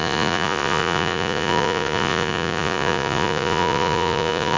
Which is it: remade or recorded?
remade